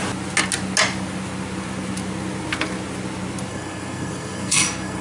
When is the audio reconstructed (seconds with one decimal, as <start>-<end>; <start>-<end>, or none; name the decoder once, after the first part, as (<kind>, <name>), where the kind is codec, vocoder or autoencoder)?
3.5-5.0 (codec, SNAC)